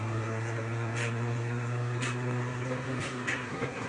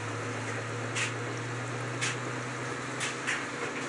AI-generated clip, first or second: first